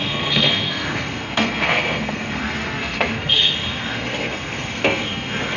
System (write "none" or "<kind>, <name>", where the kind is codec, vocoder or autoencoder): codec, SNAC